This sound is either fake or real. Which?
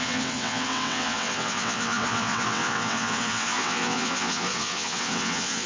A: fake